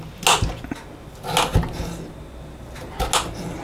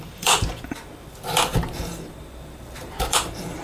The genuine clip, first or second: first